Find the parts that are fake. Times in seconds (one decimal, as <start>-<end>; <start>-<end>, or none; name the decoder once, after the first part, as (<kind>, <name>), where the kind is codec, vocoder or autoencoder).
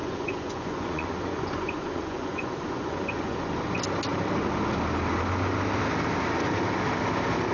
0.0-3.5 (vocoder, Vocos)